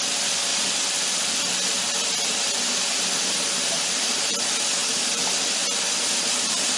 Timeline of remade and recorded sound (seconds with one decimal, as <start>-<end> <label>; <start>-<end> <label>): 0.0-0.5 remade; 0.5-3.3 recorded; 3.3-6.8 remade